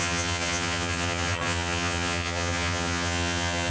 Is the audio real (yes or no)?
no